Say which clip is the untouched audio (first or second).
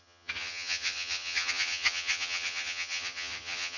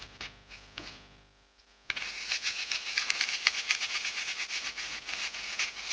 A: second